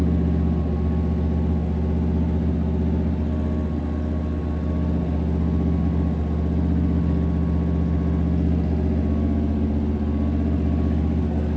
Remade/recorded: recorded